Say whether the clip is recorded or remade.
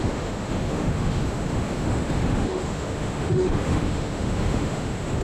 remade